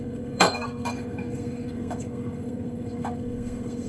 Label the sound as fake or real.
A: fake